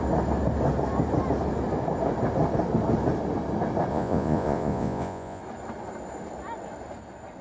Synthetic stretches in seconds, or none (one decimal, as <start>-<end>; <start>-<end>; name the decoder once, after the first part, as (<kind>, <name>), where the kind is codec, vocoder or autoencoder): 3.9-5.4 (vocoder, Vocos)